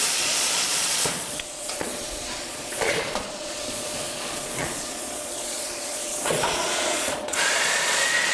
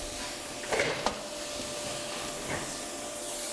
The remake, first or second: first